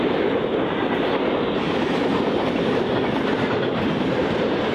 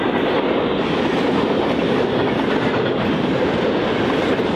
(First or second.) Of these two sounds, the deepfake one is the first